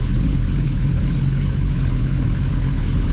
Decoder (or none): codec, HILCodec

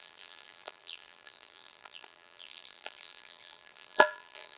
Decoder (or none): vocoder, BigVGAN v2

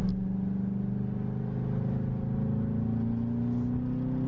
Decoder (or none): none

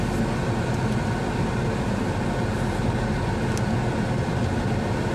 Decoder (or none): none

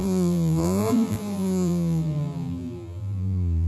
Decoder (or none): vocoder, BigVGAN v2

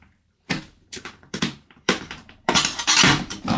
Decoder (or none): vocoder, BigVGAN v2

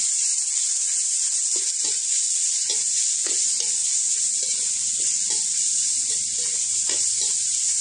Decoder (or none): none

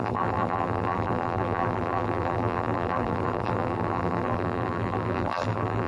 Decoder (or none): vocoder, BigVGAN v2